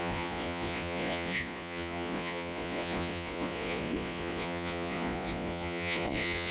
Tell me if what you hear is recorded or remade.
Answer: remade